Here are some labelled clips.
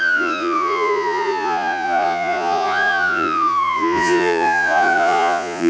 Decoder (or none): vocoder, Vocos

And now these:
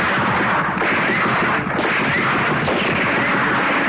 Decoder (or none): none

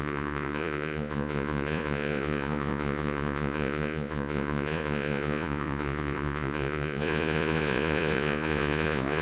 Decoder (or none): vocoder, Vocos